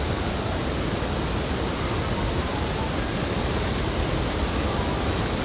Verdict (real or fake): real